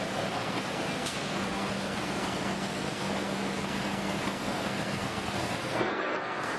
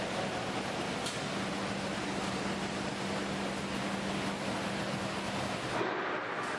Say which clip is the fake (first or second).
first